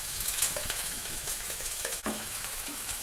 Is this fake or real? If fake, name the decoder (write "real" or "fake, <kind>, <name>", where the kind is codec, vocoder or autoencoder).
fake, autoencoder, DAC-VAE